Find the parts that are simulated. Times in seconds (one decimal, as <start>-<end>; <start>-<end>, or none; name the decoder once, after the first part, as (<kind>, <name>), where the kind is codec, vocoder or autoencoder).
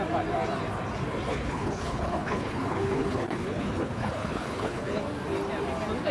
1.3-5.0 (codec, HILCodec)